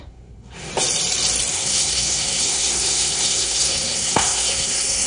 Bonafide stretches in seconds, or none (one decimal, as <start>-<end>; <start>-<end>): 0.7-1.5